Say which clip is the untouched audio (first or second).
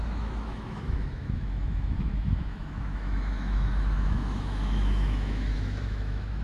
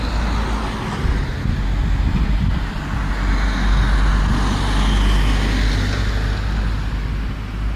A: second